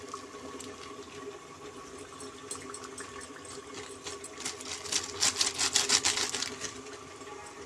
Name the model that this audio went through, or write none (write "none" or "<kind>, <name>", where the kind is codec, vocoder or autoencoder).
none